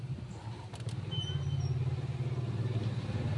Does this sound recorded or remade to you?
recorded